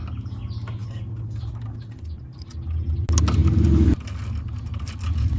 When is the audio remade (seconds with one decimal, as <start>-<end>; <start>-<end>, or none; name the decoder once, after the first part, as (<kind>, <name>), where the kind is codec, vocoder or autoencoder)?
none